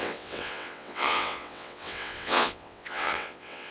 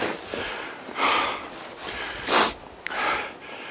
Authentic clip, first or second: second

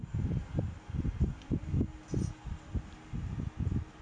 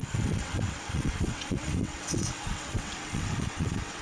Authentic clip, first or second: first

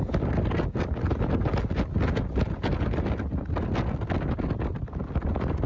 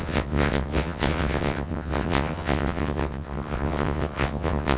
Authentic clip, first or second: first